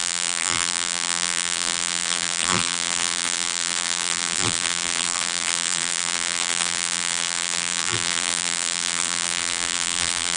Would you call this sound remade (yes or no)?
yes